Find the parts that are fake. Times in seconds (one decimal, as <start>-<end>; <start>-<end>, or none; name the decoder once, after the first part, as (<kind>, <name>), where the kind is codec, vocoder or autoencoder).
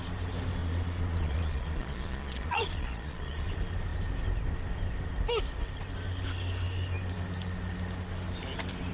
0.6-3.5 (vocoder, Vocos)